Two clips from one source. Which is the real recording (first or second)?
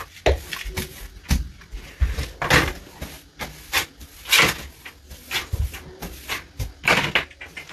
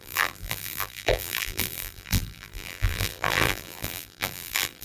first